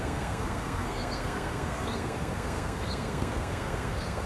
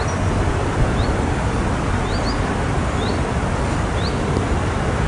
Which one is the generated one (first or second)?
first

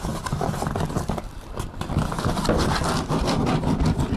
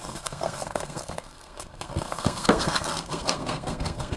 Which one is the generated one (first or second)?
second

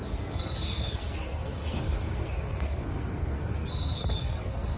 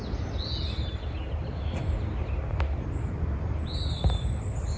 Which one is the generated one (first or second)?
first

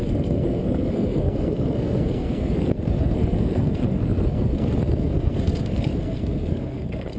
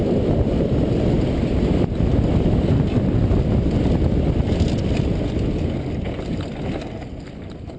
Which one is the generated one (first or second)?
first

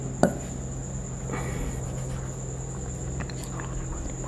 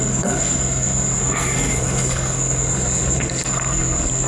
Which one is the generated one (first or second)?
second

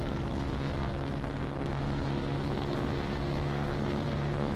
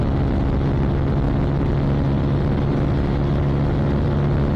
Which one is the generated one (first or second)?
first